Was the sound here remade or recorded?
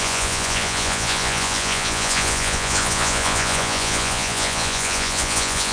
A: remade